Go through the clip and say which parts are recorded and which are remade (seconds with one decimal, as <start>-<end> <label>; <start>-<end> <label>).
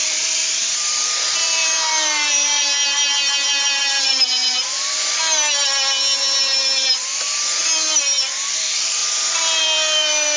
0.0-2.7 remade; 2.7-3.9 recorded; 3.9-4.6 remade; 4.6-8.5 recorded; 8.5-9.0 remade; 9.0-9.6 recorded; 9.6-10.4 remade